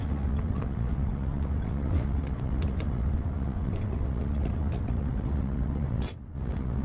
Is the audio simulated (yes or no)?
yes